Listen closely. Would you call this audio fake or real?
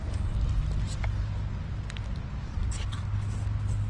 real